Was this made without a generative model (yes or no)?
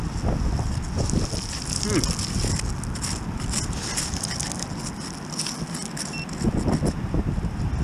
yes